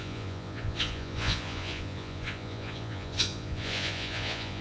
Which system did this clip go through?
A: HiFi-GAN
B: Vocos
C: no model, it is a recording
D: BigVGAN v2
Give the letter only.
B